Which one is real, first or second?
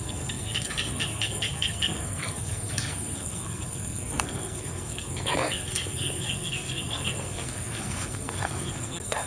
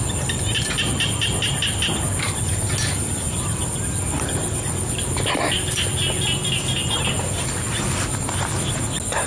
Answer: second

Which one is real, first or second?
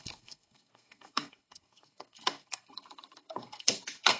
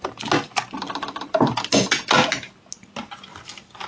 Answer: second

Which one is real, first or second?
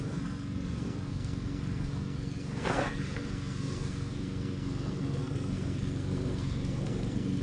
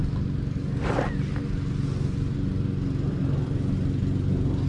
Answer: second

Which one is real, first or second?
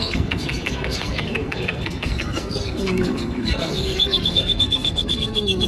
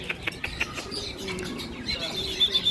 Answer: second